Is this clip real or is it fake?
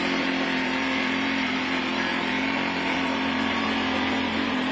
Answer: fake